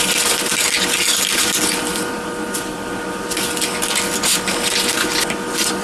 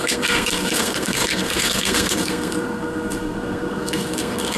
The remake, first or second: second